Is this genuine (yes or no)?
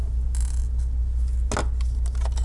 yes